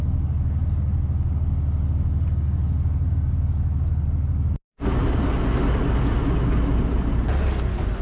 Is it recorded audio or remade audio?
recorded